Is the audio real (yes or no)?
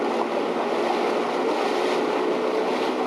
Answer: yes